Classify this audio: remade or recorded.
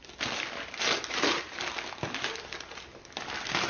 recorded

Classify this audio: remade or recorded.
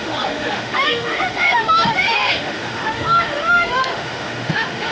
remade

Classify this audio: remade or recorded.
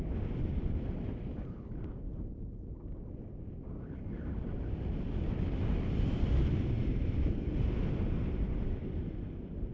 recorded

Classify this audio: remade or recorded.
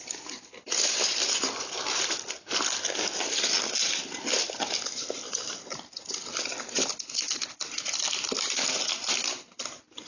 recorded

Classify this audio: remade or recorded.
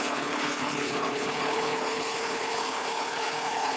remade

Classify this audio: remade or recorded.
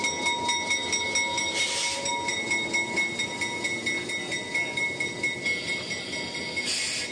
recorded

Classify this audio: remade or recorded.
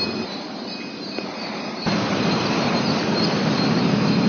remade